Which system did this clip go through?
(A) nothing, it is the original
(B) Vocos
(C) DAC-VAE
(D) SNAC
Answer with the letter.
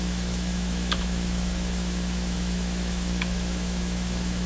C